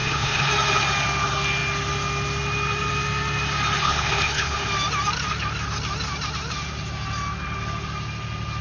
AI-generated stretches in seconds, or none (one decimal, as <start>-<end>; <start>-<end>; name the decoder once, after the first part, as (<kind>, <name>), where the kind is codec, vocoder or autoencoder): 0.0-0.5 (codec, HILCodec); 3.8-4.7